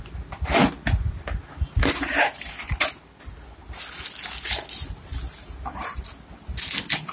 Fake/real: real